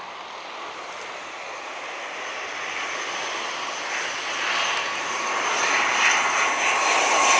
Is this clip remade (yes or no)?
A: no